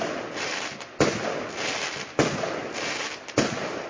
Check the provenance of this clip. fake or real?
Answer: real